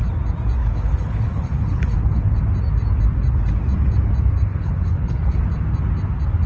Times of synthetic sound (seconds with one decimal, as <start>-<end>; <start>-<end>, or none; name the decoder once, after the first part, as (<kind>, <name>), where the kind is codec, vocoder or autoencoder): 0.6-2.4 (codec, HILCodec); 4.5-5.4